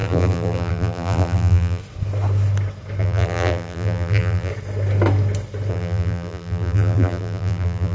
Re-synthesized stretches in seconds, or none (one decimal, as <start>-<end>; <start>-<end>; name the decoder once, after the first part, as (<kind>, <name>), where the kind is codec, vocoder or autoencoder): 0.0-1.8 (vocoder, BigVGAN v2); 3.0-4.5; 5.7-7.9